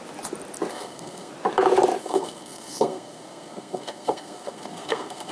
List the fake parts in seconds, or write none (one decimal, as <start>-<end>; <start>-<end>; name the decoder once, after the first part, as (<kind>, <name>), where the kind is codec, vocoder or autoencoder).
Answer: 0.7-1.3 (codec, SNAC); 2.0-5.3